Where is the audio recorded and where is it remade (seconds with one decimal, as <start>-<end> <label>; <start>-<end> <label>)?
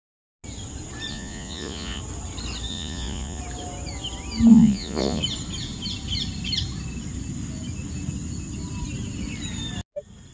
0.0-1.1 recorded; 1.1-2.0 remade; 2.0-2.7 recorded; 2.7-3.4 remade; 3.4-4.5 recorded; 4.5-5.2 remade; 5.2-10.3 recorded